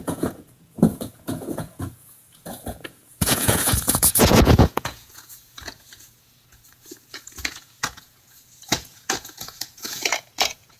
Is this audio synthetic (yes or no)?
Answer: yes